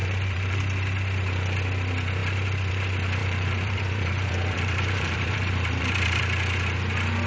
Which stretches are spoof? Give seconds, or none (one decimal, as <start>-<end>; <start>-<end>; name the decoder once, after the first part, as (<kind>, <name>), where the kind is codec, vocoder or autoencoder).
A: 0.0-0.6 (vocoder, BigVGAN v2); 3.2-6.2